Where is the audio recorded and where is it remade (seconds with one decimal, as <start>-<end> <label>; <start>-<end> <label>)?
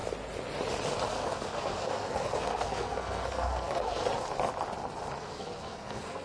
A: 0.0-1.1 recorded; 1.1-4.0 remade; 4.0-5.2 recorded; 5.2-6.2 remade